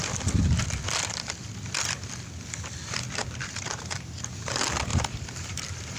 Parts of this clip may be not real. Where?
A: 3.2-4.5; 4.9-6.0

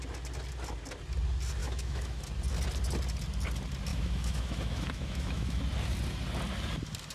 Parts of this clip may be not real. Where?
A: 1.6-2.2; 3.9-5.6